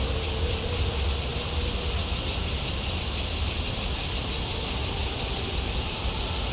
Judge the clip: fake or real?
real